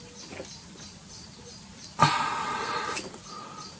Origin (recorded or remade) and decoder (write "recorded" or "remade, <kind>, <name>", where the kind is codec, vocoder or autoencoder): recorded